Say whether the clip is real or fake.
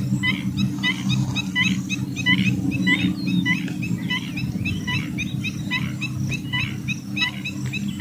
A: real